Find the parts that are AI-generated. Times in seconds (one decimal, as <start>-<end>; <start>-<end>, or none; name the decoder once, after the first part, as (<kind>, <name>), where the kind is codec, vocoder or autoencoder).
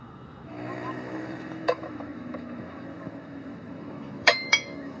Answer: 0.0-5.0 (autoencoder, DAC-VAE)